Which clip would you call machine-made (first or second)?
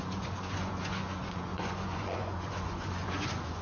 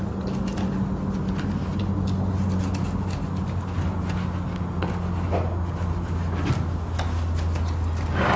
first